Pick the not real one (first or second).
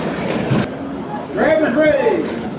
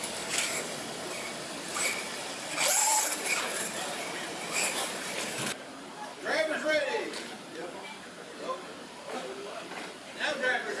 second